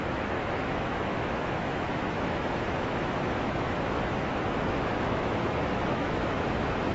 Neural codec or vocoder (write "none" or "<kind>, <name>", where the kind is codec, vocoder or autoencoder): autoencoder, DAC-VAE